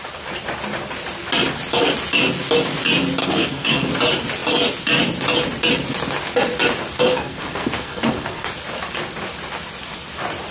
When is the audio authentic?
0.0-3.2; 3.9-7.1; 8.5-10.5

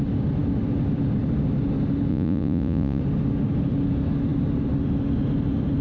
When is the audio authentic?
0.0-2.1; 3.0-5.8

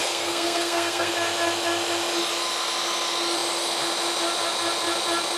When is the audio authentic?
1.1-5.4

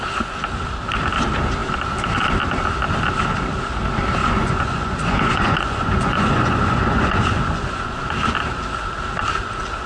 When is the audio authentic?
0.0-4.2; 8.0-9.9

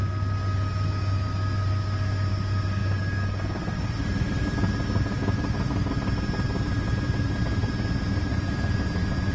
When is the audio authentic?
0.0-5.2; 5.9-9.3

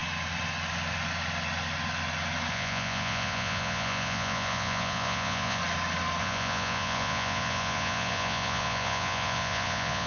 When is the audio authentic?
0.0-2.5; 5.6-6.2

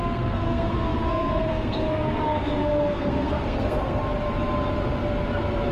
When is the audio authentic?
4.0-5.7

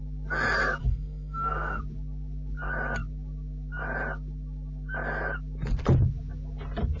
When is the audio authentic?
0.0-0.8; 1.8-7.0